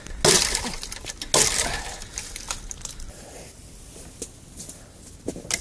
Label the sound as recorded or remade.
recorded